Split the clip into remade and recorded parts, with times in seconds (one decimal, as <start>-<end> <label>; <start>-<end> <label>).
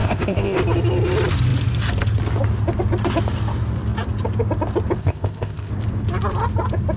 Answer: 0.0-0.6 remade; 0.6-5.0 recorded; 5.0-5.7 remade; 5.7-7.0 recorded